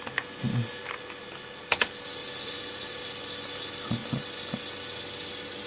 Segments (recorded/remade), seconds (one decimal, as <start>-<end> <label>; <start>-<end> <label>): 0.0-2.2 recorded; 2.2-3.2 remade; 3.2-5.7 recorded